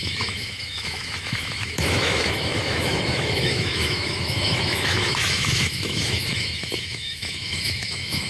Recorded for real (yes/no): no